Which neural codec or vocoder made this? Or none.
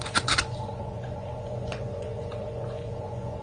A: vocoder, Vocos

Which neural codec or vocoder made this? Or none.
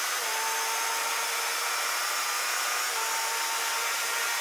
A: none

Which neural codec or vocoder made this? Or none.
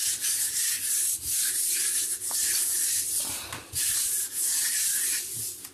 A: none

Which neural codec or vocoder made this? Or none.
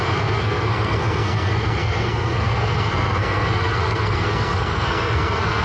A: codec, SNAC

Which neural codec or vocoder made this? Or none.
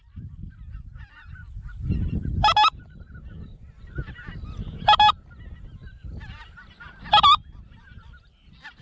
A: none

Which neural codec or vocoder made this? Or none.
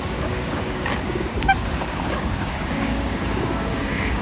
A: codec, DAC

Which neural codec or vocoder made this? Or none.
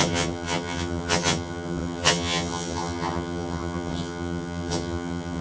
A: vocoder, HiFi-GAN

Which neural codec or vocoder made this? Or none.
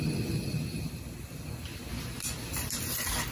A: none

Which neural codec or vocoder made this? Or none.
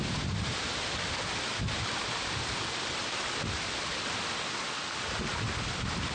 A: none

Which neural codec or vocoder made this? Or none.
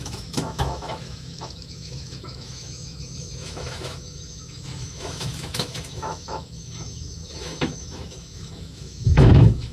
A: autoencoder, DAC-VAE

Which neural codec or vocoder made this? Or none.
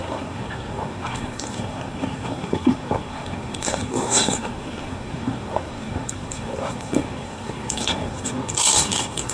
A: codec, SNAC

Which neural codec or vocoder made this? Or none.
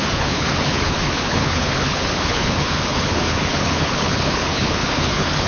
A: codec, HILCodec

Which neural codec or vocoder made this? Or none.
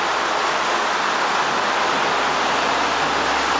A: none